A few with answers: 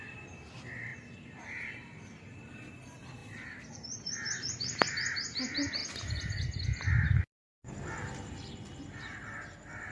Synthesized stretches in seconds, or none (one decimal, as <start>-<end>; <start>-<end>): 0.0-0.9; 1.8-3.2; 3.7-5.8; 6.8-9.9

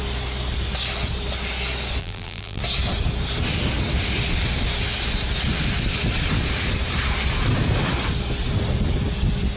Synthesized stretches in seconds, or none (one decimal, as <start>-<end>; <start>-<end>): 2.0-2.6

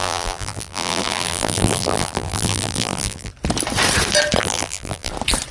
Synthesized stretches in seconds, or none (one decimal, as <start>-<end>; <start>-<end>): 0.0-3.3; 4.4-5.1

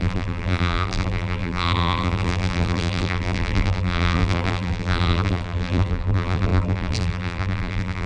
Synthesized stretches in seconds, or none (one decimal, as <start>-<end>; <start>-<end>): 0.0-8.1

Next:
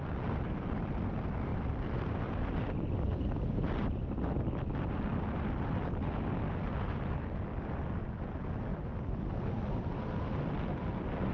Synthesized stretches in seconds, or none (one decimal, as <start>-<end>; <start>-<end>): 1.5-5.2; 8.7-9.6